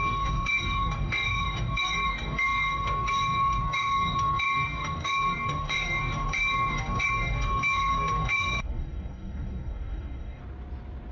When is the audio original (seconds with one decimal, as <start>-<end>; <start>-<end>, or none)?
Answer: 10.4-11.1